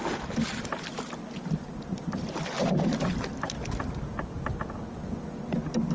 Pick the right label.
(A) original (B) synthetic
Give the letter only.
A